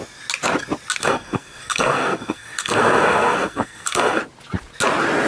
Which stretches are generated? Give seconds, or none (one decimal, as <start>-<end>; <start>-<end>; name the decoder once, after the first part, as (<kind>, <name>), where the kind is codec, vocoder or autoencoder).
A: 1.0-4.2 (codec, SNAC)